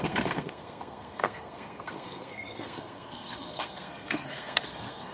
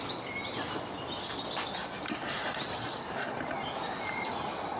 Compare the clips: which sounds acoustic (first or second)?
second